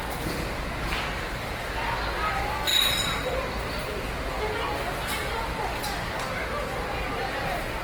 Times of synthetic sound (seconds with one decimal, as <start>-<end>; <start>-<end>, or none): none